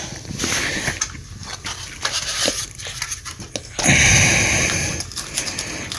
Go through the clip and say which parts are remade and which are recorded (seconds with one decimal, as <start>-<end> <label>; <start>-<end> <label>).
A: 0.0-6.0 recorded